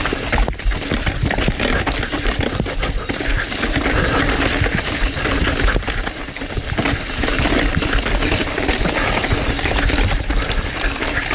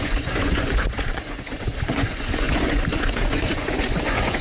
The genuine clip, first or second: first